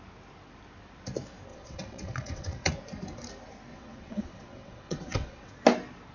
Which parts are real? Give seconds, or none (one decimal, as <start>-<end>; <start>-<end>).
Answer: 0.0-1.5; 2.7-3.7; 5.5-6.1